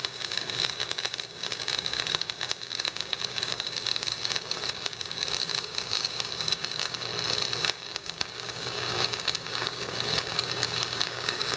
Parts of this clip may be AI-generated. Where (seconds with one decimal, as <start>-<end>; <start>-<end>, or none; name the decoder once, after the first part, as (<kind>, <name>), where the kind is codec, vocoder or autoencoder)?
0.0-7.1 (codec, DAC); 7.6-11.6